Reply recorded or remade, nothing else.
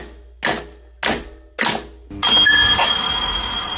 recorded